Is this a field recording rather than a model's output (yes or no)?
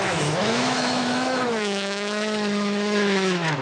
no